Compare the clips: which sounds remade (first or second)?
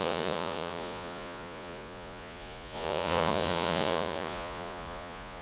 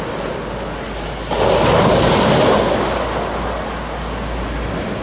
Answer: first